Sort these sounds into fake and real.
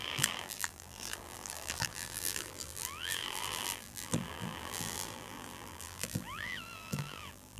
fake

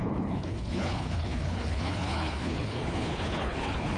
fake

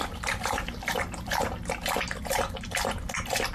real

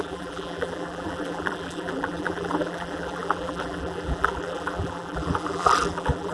fake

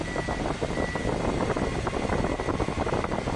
real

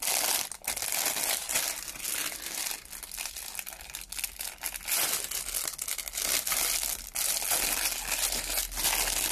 real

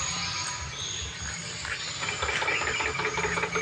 real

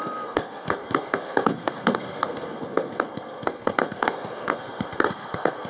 fake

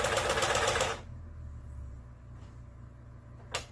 real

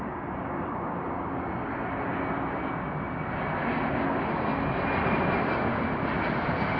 real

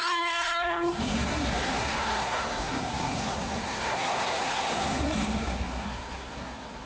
fake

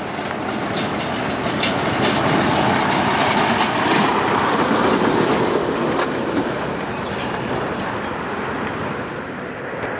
real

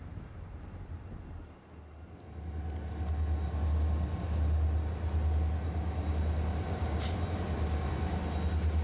real